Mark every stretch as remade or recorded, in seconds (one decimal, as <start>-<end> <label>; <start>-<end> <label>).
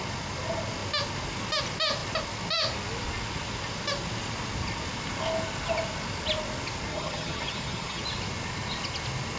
0.0-6.9 recorded; 6.9-8.0 remade; 8.0-9.4 recorded